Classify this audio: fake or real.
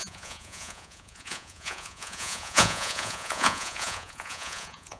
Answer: fake